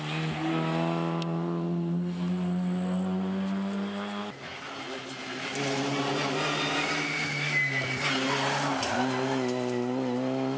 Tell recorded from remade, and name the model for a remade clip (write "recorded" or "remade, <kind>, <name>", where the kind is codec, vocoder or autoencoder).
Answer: recorded